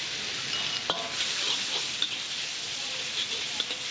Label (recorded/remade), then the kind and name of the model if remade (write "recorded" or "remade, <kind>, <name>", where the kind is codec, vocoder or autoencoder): recorded